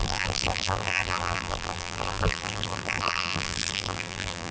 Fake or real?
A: fake